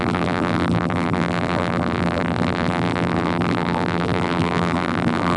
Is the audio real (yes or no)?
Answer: no